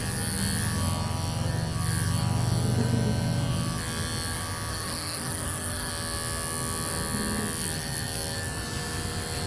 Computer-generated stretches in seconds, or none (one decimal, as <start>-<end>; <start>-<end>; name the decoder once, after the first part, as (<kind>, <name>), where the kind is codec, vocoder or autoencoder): 4.7-5.9 (codec, SNAC)